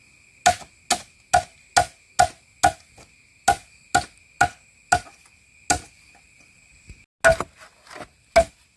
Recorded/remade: recorded